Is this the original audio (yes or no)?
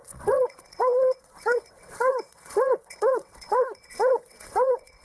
no